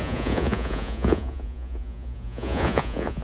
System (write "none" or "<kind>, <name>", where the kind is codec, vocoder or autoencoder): vocoder, Vocos